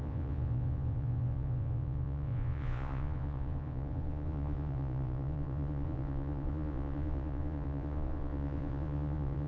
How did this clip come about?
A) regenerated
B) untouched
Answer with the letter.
A